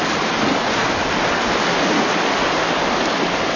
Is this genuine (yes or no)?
yes